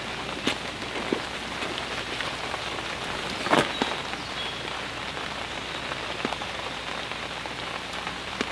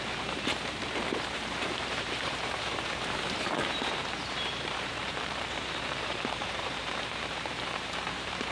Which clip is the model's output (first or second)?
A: second